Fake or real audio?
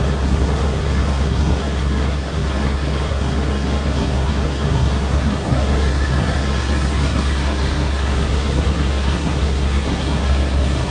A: fake